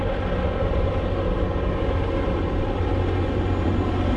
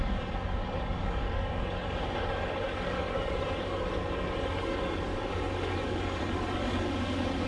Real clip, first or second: first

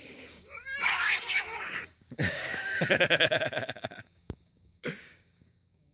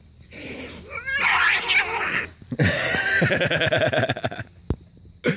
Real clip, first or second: second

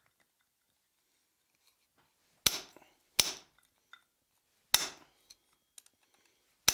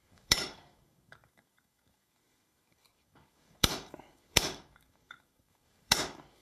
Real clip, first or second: first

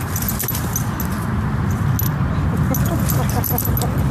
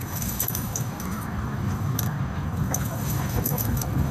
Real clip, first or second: first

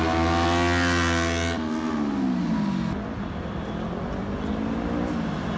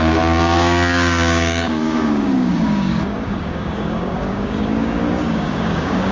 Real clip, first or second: first